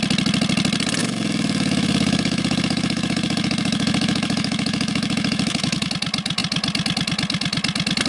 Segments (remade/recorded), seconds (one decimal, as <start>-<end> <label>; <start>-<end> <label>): 0.0-1.0 recorded; 1.0-5.9 remade; 5.9-8.1 recorded